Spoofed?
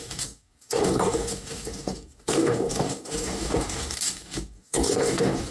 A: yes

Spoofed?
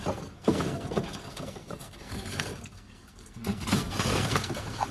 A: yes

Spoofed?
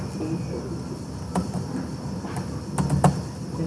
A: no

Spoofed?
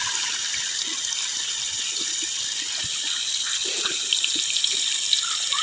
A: no